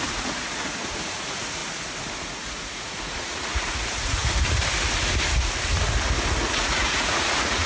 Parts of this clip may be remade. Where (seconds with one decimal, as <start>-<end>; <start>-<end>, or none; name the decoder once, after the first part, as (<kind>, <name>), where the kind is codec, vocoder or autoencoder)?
0.0-1.6 (vocoder, Vocos); 2.3-4.2; 6.4-7.7